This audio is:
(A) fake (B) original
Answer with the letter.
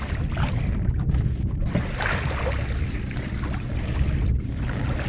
B